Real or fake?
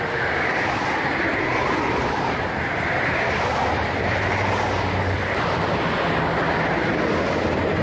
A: real